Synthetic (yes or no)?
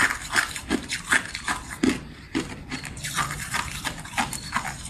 yes